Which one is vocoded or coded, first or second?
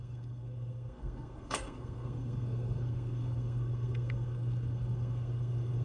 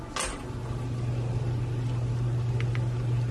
first